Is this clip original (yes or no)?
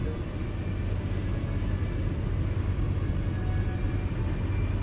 yes